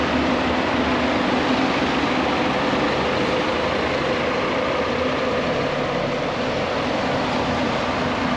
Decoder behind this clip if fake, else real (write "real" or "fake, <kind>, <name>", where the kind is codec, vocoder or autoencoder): real